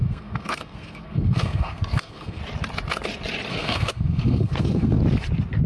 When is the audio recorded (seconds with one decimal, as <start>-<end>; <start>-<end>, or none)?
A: 2.4-3.5; 5.0-5.7